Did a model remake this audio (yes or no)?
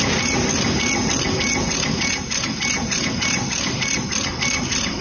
no